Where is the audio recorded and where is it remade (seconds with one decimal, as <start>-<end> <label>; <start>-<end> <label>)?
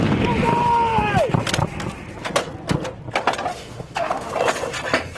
0.0-3.5 recorded; 3.5-4.3 remade; 4.3-5.2 recorded